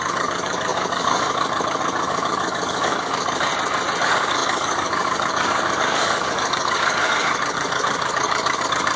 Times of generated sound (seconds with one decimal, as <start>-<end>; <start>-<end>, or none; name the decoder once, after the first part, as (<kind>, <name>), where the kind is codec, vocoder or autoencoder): 0.0-3.5 (codec, DAC); 4.0-9.0